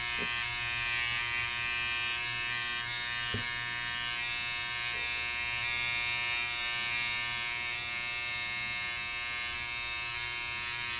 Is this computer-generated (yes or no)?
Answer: no